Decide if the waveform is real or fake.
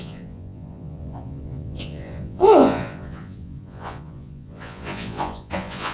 fake